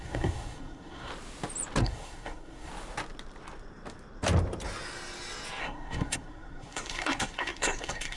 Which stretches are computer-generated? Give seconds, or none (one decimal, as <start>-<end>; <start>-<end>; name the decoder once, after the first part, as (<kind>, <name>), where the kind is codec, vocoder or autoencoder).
0.0-1.1 (codec, SNAC); 1.8-2.7; 5.6-8.2